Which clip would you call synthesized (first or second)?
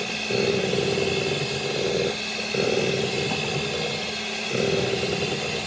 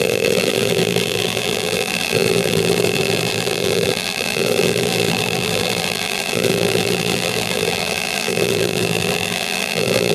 second